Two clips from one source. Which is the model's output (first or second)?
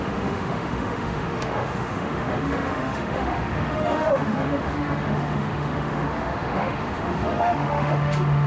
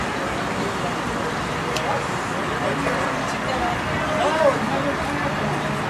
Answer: first